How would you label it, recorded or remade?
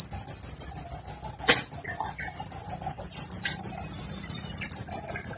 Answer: recorded